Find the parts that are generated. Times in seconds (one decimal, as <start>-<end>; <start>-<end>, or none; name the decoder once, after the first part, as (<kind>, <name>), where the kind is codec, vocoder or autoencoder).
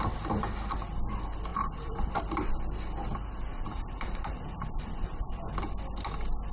1.5-2.1 (vocoder, BigVGAN v2); 3.5-5.5